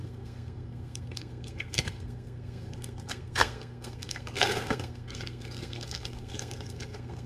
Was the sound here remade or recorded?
remade